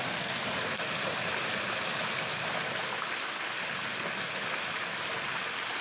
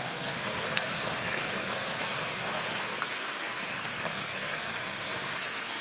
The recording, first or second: first